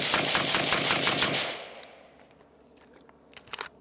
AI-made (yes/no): no